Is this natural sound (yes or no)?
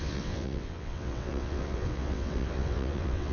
no